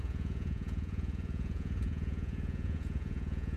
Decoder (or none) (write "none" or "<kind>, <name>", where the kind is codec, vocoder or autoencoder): vocoder, Vocos